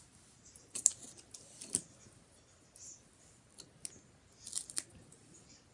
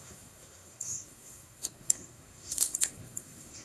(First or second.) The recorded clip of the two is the first